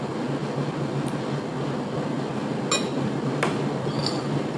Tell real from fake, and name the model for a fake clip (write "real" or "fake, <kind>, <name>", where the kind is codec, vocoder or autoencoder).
real